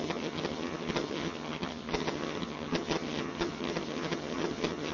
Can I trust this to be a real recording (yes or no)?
no